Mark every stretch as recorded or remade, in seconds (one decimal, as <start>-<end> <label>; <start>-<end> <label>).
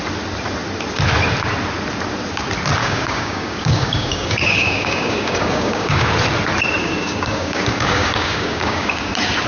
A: 0.0-2.8 recorded; 2.8-6.1 remade; 6.1-6.8 recorded; 6.8-9.1 remade; 9.1-9.5 recorded